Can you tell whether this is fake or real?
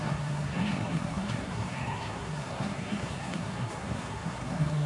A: fake